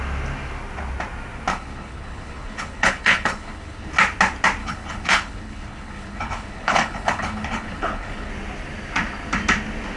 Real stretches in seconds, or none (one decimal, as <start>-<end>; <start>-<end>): 0.0-1.5; 3.9-4.6; 8.3-10.0